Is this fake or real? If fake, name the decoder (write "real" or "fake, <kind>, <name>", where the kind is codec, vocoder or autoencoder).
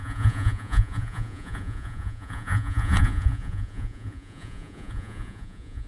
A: fake, vocoder, Vocos